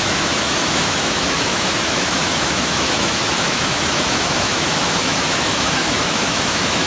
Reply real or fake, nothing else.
fake